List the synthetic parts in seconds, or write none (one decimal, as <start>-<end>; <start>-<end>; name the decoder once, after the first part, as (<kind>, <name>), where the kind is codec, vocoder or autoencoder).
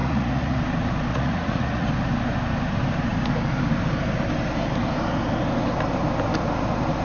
0.0-0.6 (vocoder, Vocos); 1.1-1.9